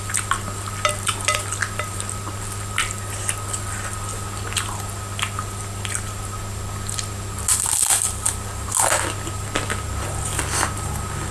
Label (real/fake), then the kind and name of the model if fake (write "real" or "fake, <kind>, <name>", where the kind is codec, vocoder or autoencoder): real